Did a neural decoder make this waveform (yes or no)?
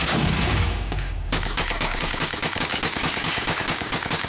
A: yes